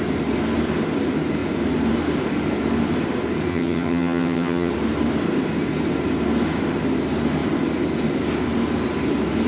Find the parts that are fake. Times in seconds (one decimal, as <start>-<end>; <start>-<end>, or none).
3.5-4.7